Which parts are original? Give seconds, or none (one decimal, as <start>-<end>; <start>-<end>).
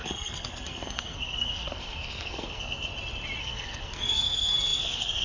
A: 2.9-3.4